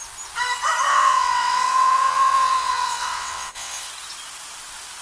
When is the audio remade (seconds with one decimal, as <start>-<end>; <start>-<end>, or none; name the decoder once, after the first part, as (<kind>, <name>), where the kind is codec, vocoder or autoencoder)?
0.9-3.9 (vocoder, WaveNeXt)